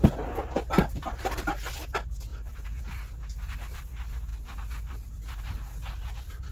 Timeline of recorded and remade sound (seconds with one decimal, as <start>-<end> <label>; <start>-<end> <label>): 0.0-0.9 recorded; 0.9-1.5 remade; 1.5-6.5 recorded